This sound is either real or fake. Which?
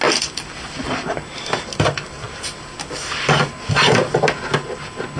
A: real